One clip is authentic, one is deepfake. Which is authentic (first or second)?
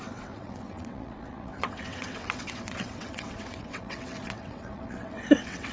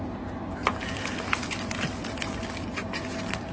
second